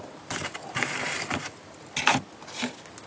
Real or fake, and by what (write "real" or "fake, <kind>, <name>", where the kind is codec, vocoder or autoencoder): real